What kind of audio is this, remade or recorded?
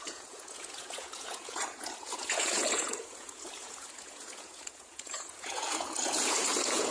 remade